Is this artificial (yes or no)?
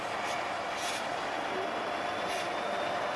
no